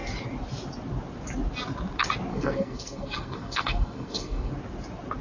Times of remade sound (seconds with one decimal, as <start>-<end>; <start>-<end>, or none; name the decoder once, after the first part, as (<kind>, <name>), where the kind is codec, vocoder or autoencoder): 2.3-4.5 (codec, SNAC)